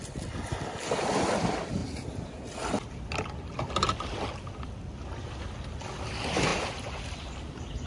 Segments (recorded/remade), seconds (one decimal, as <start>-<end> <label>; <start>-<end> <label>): 0.0-7.9 recorded